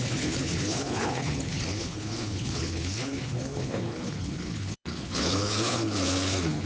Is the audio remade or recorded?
remade